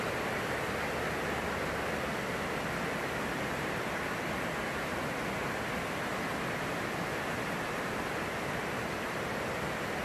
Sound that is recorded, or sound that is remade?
recorded